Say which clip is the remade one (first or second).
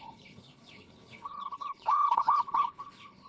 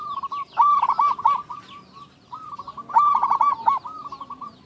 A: first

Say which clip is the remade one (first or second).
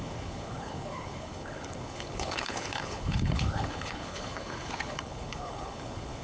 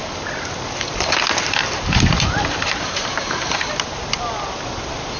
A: first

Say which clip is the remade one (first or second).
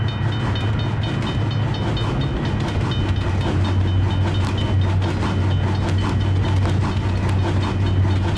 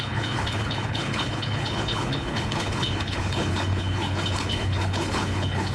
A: second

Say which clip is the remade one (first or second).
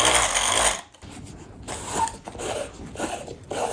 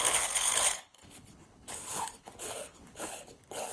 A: second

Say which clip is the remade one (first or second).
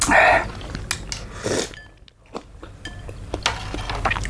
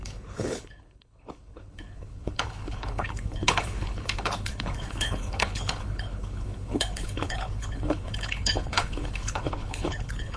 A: second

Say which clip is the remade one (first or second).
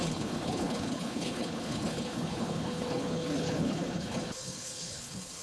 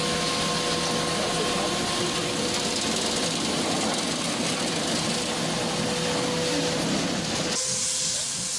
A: first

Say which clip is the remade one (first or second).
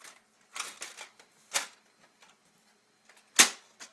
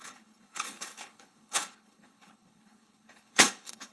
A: second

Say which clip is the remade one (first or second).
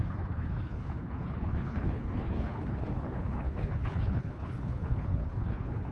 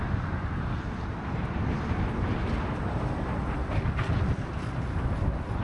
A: first